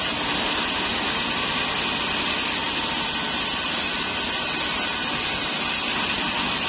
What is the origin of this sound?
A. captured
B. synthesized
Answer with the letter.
A